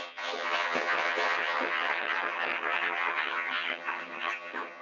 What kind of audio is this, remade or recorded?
remade